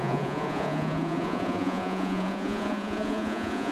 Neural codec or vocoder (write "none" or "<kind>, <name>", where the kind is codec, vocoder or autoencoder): vocoder, Vocos